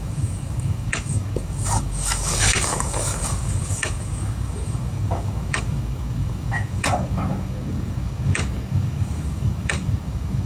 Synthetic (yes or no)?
yes